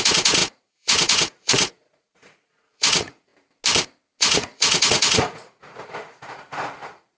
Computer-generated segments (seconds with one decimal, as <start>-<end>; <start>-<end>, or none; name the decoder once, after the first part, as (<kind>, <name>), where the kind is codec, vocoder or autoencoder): 0.0-3.3 (vocoder, Vocos); 4.2-7.2